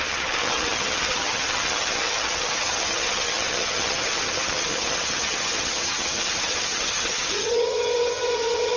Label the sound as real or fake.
fake